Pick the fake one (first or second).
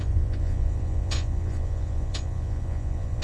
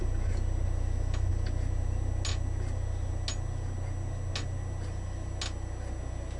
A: first